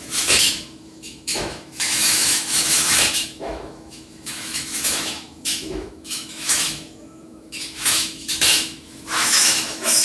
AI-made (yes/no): yes